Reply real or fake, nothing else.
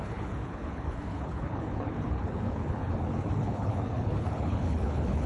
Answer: fake